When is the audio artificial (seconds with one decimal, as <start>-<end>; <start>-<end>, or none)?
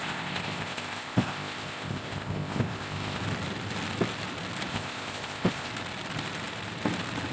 0.0-3.2; 4.7-5.7